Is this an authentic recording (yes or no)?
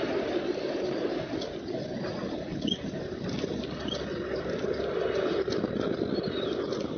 yes